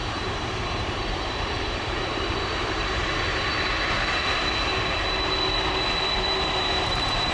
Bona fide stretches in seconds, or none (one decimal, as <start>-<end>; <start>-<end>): 3.0-6.2